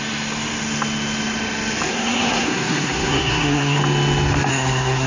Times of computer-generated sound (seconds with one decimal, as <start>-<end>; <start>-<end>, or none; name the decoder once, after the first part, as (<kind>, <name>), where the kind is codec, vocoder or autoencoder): 1.9-3.8 (codec, SNAC); 4.5-5.1

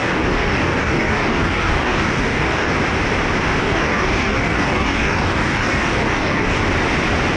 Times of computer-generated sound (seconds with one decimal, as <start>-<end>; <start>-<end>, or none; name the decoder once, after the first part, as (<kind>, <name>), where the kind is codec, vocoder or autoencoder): 0.0-2.7 (codec, DAC); 3.6-6.6